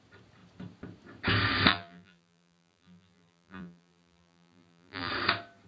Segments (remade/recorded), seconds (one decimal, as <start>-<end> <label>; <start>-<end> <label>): 0.0-1.7 recorded; 1.7-5.1 remade; 5.1-5.7 recorded